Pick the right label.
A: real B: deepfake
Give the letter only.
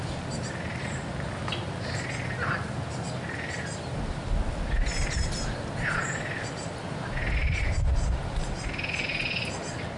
A